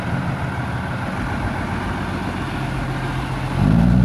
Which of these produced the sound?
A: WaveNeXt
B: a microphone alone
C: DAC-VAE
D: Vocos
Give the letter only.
B